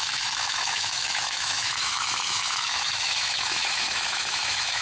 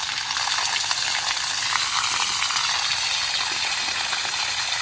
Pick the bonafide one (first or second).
second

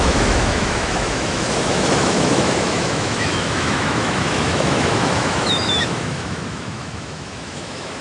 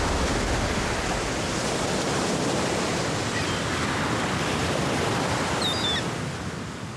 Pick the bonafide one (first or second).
second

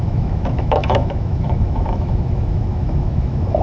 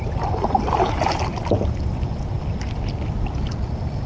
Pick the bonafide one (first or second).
second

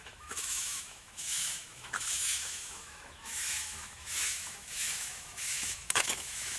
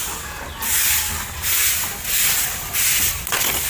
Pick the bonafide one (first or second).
second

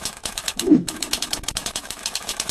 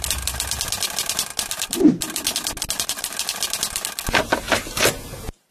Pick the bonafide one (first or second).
second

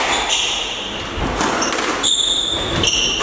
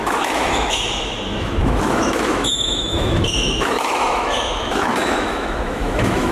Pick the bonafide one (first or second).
first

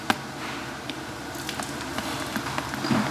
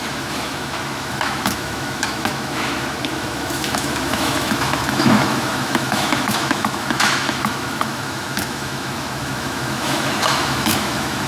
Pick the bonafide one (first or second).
first